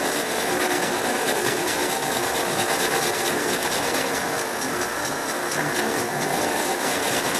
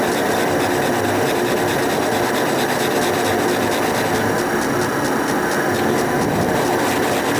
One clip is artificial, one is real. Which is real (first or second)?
second